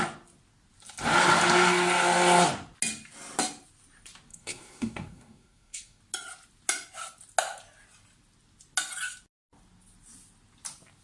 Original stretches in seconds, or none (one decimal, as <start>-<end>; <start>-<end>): 0.0-4.3; 6.0-11.0